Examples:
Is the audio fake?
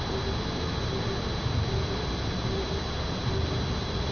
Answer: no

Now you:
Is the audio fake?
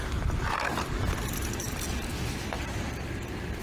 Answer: yes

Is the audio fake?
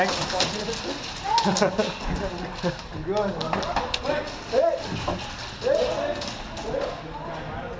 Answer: no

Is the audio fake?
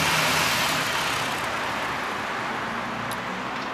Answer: no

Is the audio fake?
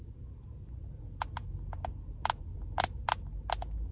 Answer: no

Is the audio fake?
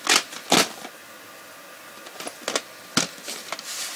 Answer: no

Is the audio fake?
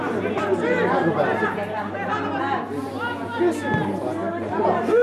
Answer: no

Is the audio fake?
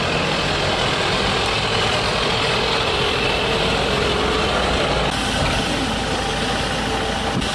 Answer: no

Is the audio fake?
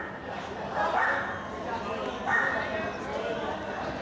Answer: no